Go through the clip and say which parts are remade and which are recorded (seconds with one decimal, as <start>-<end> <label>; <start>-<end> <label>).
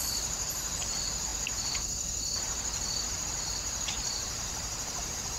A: 0.0-1.3 remade; 1.3-4.5 recorded; 4.5-5.4 remade